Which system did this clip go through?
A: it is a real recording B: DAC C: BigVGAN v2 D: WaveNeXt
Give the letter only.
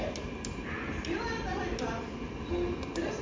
A